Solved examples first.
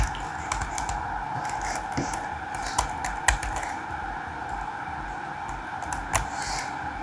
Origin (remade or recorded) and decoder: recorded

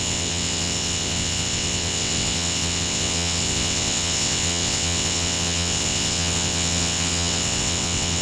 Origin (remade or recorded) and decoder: remade, vocoder, WaveNeXt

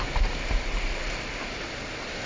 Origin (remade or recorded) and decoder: recorded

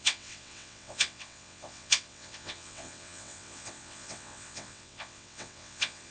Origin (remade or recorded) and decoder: remade, vocoder, WaveNeXt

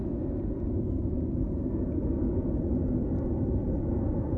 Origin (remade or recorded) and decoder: recorded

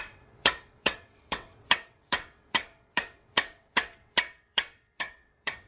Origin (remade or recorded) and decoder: remade, vocoder, WaveNeXt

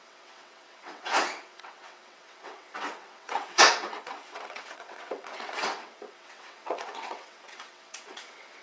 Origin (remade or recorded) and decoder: remade, vocoder, WaveNeXt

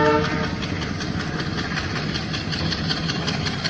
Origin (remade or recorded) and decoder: recorded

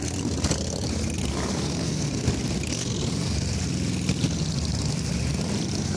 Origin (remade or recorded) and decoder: recorded